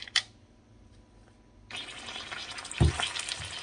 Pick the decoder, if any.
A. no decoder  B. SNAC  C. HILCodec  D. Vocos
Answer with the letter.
A